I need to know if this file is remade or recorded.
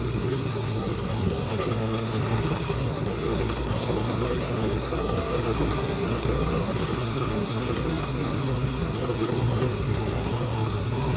remade